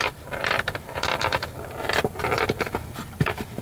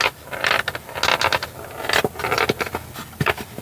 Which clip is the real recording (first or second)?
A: second